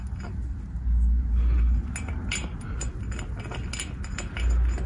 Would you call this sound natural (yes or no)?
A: yes